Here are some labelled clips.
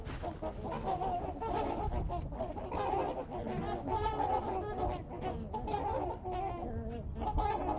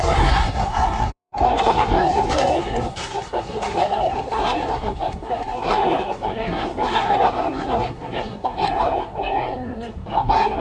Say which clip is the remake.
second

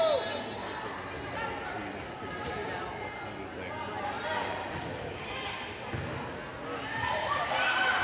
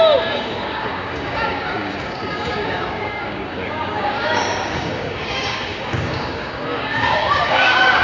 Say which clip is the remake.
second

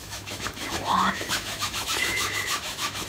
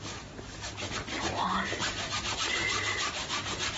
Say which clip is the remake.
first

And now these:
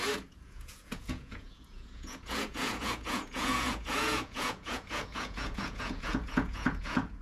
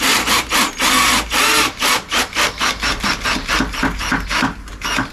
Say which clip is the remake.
first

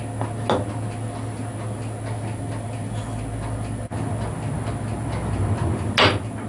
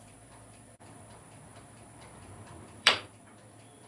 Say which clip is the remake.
second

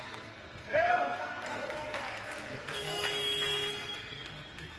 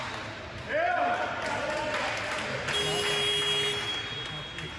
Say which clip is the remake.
first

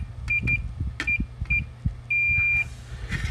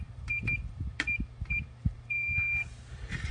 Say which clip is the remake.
second